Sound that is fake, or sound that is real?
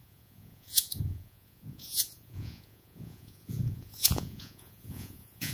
fake